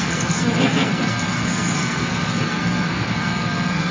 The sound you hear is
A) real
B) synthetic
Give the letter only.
B